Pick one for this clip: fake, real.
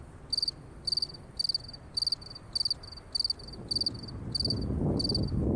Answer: real